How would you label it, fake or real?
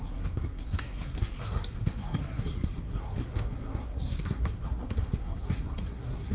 fake